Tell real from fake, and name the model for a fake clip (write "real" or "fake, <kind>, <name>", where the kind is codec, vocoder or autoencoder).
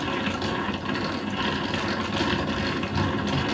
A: real